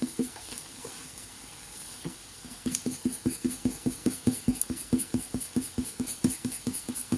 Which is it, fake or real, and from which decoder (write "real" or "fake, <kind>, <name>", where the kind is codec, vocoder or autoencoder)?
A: fake, codec, SNAC